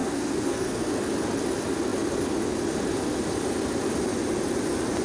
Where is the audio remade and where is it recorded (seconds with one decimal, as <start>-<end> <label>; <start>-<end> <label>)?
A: 0.0-1.0 remade; 1.0-5.0 recorded